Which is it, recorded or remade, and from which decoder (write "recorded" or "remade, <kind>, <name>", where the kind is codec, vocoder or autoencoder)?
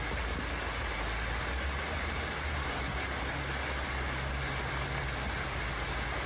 recorded